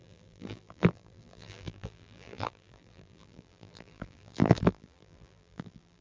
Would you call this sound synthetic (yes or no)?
yes